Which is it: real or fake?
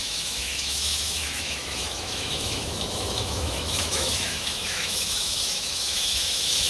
fake